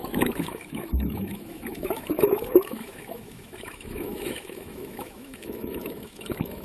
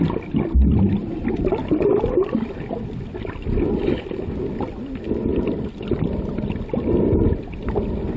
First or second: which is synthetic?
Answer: first